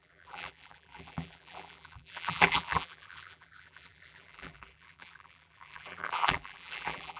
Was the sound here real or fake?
fake